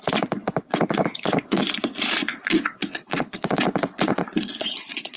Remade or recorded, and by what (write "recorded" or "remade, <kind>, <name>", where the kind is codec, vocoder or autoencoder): remade, vocoder, Vocos